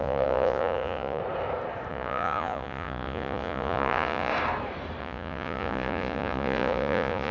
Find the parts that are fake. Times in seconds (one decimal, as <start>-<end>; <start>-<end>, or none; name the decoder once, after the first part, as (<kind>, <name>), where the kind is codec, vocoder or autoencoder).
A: 0.0-1.2 (vocoder, Vocos); 1.9-4.3; 5.0-7.3

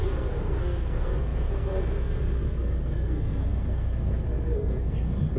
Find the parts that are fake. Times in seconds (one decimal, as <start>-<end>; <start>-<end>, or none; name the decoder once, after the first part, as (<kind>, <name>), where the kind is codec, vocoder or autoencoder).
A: 0.0-5.4 (codec, SNAC)

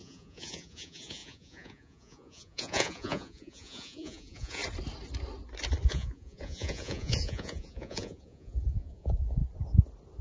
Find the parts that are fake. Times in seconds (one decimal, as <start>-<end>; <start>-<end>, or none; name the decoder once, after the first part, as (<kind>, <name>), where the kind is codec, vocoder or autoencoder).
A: 0.0-4.6 (vocoder, Vocos); 5.9-9.4

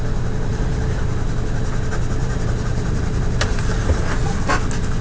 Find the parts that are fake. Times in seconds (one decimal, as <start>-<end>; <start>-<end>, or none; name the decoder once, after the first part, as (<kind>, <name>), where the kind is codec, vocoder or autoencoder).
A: 0.5-1.0 (vocoder, BigVGAN v2); 2.2-4.0

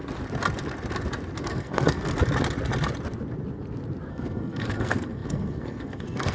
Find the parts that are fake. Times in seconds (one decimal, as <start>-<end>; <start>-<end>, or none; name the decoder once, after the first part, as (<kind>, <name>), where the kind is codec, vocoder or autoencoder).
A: 1.4-2.1 (codec, SNAC); 4.1-6.3

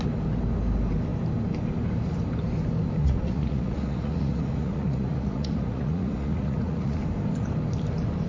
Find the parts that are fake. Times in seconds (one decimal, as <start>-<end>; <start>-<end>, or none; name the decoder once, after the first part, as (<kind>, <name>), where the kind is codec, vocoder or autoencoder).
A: 3.0-7.0 (vocoder, Vocos)

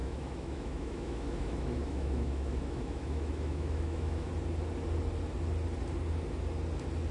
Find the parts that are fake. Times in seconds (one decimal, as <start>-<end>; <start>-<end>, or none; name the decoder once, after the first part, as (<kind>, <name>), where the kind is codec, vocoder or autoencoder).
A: 0.0-4.3 (autoencoder, DAC-VAE)

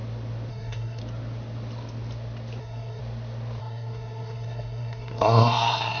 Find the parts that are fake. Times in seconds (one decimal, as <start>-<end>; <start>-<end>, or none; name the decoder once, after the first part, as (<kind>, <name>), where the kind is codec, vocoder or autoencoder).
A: 0.5-1.0 (codec, SNAC); 2.6-3.0; 3.6-6.0